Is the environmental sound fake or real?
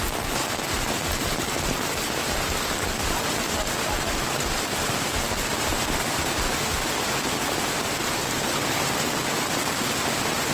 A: real